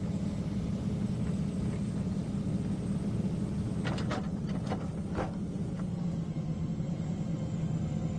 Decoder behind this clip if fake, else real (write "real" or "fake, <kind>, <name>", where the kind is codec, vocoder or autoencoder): real